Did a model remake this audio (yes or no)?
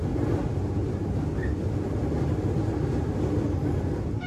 no